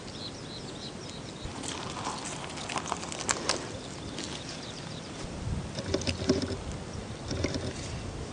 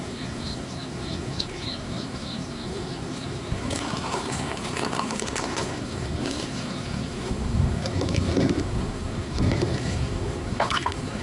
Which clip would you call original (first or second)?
first